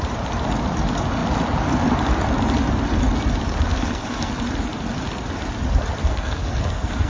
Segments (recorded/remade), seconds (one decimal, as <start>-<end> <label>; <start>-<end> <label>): 0.0-3.7 recorded; 3.7-4.3 remade; 4.3-6.0 recorded; 6.0-7.1 remade